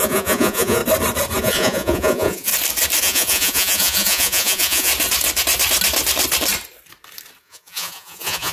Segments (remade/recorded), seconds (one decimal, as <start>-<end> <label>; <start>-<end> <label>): 0.0-0.8 remade; 0.8-1.4 recorded; 1.4-2.5 remade; 2.5-3.0 recorded; 3.0-4.9 remade; 4.9-7.4 recorded; 7.4-8.5 remade

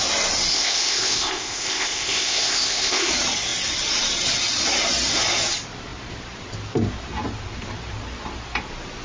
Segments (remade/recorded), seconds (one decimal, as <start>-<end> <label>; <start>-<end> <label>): 0.0-0.5 recorded; 0.5-3.1 remade; 3.1-9.0 recorded

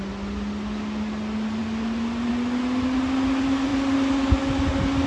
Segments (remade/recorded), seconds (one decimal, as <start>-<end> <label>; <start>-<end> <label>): 0.0-5.1 recorded